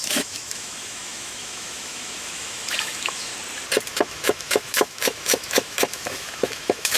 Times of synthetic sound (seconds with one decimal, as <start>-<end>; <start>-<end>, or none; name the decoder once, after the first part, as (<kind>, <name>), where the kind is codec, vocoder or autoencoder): 0.0-3.3 (autoencoder, DAC-VAE); 3.9-7.0